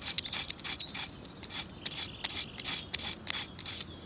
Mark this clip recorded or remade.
recorded